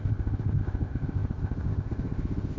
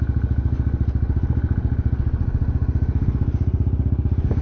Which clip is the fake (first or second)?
first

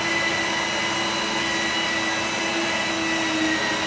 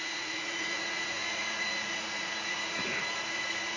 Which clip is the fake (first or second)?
second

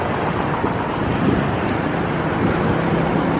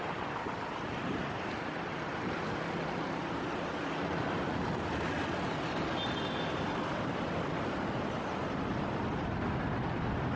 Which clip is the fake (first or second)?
second